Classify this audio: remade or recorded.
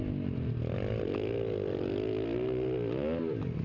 recorded